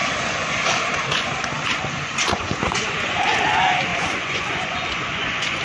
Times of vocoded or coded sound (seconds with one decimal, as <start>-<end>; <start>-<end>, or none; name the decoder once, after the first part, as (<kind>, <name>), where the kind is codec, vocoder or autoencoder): 0.0-3.4 (vocoder, Vocos); 3.9-5.6